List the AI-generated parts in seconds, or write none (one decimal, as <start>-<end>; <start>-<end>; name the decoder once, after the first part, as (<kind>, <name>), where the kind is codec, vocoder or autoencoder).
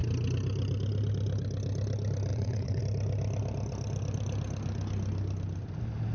2.3-2.8 (vocoder, WaveNeXt)